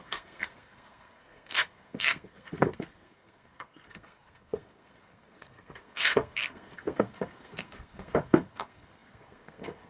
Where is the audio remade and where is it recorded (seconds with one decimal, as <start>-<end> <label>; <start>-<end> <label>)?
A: 0.0-9.9 remade